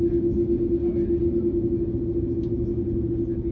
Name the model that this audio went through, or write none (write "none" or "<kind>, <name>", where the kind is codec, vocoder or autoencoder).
none